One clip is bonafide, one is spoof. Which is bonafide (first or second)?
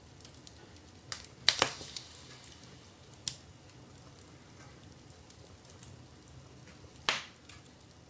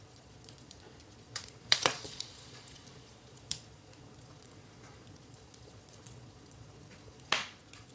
first